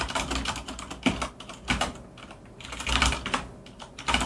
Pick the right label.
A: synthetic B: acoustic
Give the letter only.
B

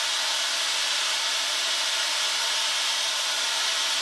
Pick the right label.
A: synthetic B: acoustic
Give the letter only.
B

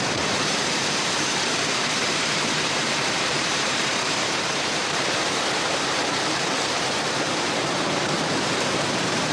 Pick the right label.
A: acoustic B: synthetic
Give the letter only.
B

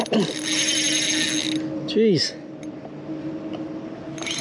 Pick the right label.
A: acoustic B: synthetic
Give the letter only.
A